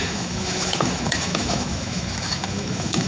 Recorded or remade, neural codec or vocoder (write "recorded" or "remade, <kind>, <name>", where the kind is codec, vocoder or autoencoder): remade, autoencoder, DAC-VAE